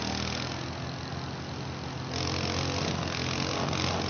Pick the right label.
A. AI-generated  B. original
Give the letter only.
B